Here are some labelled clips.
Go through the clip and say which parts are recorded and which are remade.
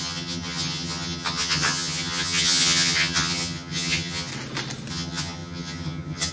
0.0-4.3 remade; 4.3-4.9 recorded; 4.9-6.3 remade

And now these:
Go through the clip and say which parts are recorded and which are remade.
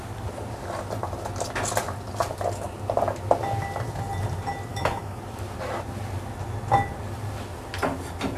0.0-4.7 recorded; 4.7-5.2 remade; 5.2-8.4 recorded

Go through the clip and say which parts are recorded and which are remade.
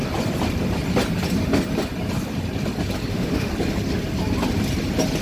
0.0-3.1 recorded; 3.1-3.5 remade; 3.5-5.2 recorded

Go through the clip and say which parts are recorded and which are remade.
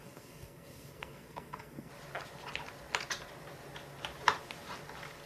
0.0-1.9 remade; 1.9-5.3 recorded